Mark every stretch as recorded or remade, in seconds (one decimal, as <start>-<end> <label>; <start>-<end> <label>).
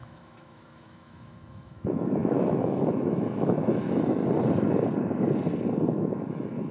0.0-4.2 remade; 4.2-5.9 recorded; 5.9-6.7 remade